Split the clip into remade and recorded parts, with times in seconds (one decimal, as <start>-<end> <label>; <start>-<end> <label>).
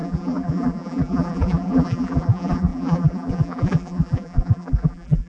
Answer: 0.0-5.3 remade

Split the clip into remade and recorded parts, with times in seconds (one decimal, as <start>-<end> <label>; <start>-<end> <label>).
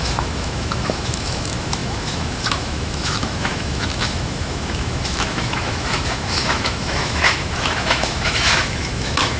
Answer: 0.0-9.4 remade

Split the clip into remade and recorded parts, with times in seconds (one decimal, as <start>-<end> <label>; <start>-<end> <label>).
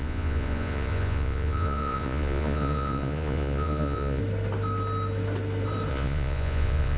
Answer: 0.0-4.2 remade; 4.2-5.9 recorded; 5.9-7.0 remade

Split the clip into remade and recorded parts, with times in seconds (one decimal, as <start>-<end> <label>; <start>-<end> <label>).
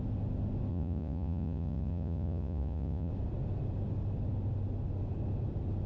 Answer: 0.0-0.7 recorded; 0.7-3.1 remade; 3.1-5.9 recorded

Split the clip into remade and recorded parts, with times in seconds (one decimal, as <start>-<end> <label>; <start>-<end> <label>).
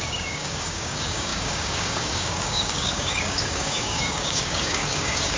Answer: 0.0-5.4 remade